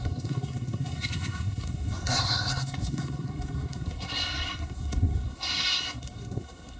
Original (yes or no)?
no